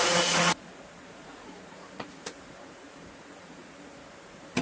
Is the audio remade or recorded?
remade